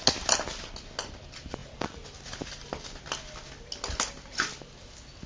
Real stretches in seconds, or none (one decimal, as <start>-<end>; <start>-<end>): 0.0-5.3